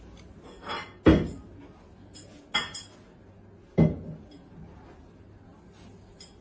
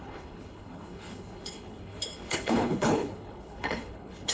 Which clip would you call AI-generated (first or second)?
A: second